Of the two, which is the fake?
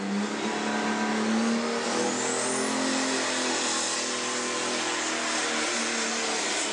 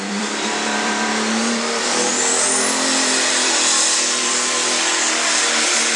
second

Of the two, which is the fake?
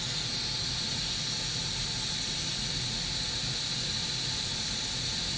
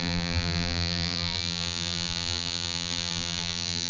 second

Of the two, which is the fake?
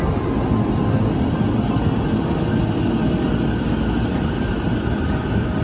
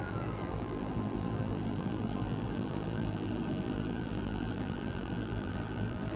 second